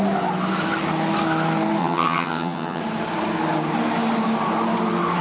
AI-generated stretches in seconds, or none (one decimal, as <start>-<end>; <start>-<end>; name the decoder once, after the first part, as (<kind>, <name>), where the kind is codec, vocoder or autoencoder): 1.8-2.8 (vocoder, HiFi-GAN)